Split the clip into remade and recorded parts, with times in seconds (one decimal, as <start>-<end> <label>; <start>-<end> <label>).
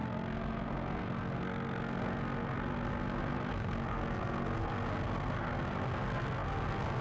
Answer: 0.0-7.0 remade